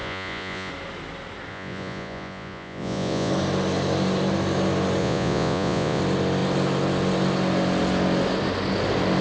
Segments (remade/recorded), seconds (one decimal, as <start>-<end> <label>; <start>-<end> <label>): 0.0-0.7 remade; 0.7-1.5 recorded; 1.5-3.3 remade; 3.3-5.0 recorded; 5.0-6.0 remade; 6.0-9.2 recorded